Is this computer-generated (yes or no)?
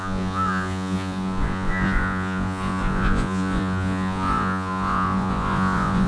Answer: yes